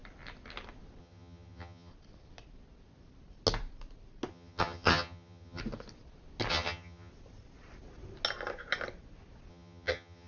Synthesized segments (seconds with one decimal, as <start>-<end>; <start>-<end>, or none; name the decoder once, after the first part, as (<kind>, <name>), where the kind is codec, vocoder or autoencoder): 1.0-1.9 (vocoder, HiFi-GAN); 4.3-5.6; 6.5-7.1; 9.5-10.3